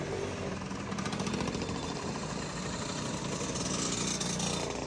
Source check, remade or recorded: recorded